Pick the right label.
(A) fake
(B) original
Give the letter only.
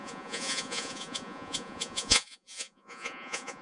A